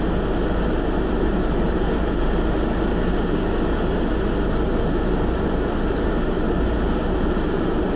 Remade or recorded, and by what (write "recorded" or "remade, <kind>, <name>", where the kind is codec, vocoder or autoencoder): recorded